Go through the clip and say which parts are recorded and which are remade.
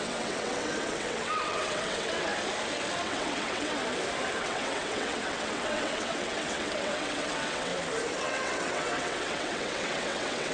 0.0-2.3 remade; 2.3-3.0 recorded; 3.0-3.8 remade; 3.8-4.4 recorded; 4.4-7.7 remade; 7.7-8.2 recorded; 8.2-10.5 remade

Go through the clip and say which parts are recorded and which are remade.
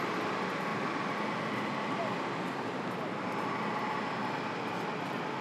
0.0-5.4 recorded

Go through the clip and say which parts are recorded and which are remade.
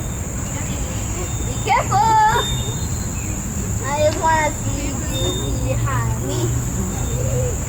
0.0-7.7 recorded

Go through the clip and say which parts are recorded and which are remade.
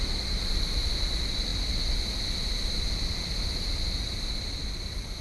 0.0-5.2 recorded